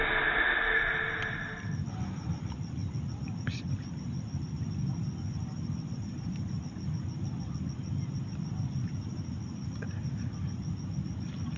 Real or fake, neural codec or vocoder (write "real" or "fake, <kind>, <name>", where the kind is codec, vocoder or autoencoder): real